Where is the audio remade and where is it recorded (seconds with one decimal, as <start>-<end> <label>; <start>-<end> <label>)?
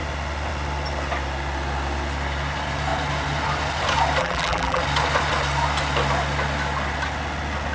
0.0-4.2 recorded; 4.2-4.8 remade; 4.8-7.7 recorded